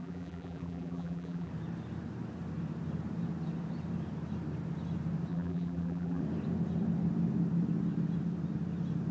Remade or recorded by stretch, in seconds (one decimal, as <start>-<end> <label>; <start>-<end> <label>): 0.0-1.5 remade; 1.5-5.3 recorded; 5.3-6.2 remade; 6.2-9.1 recorded